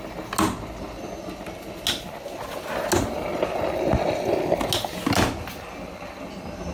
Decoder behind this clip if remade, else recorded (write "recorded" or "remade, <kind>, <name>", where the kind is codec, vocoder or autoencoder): recorded